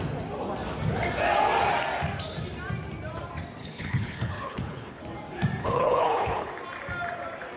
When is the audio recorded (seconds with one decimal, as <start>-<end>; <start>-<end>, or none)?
0.0-3.6; 5.0-5.6; 6.5-7.6

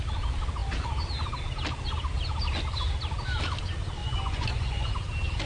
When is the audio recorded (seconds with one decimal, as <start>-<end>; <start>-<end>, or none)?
0.0-4.0; 4.9-5.5

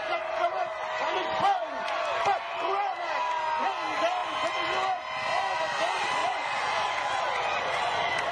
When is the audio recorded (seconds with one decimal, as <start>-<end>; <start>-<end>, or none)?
0.0-6.2

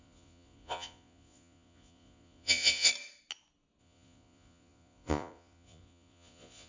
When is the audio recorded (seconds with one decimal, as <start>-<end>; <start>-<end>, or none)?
2.9-3.8

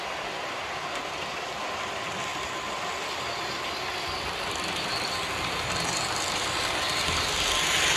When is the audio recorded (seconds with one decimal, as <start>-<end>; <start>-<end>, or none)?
0.0-8.0

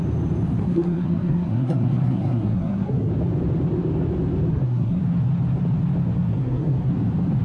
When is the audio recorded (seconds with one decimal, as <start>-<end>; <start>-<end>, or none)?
0.0-0.6; 3.1-4.5; 5.0-6.3; 6.9-7.4